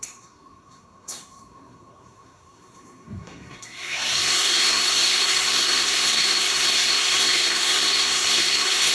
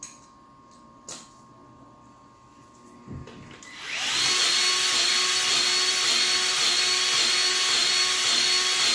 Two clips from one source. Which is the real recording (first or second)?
second